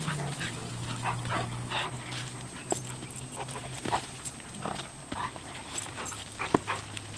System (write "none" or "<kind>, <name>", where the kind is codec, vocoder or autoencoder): none